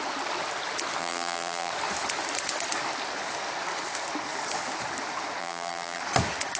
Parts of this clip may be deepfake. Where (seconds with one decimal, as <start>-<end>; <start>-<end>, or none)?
1.0-1.7; 5.4-6.0